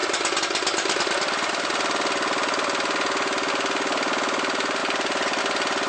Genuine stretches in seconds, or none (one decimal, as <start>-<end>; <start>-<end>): 0.0-5.9